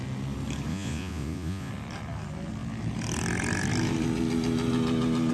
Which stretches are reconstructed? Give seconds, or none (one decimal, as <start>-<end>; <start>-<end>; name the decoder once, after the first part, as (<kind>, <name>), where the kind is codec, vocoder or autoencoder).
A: 0.7-1.7 (vocoder, Vocos)

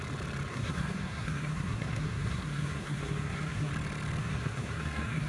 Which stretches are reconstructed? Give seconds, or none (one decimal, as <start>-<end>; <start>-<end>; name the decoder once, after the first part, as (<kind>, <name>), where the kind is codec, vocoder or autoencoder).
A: 0.5-3.7 (codec, SNAC); 4.2-5.3

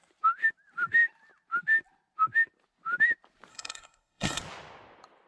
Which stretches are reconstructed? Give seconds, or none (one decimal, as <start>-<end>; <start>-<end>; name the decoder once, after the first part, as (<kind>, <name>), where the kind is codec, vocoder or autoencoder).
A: 3.5-4.4 (codec, SNAC)